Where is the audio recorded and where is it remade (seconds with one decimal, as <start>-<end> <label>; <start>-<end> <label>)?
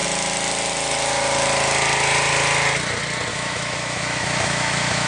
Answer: 0.0-3.3 recorded; 3.3-5.1 remade